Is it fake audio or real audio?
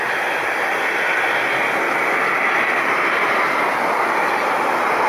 real